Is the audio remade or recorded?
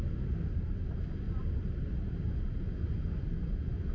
recorded